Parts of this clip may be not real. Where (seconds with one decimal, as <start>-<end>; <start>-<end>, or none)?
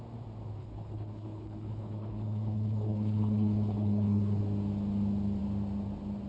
0.6-4.4